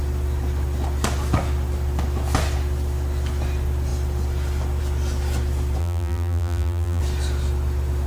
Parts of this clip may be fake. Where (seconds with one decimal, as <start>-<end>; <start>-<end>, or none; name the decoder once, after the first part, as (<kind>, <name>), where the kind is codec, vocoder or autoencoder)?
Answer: 5.8-7.0 (vocoder, BigVGAN v2)